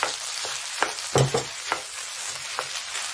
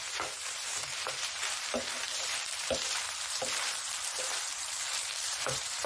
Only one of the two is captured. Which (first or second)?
first